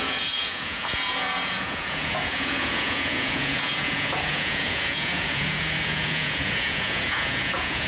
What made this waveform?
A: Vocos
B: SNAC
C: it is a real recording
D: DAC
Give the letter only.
A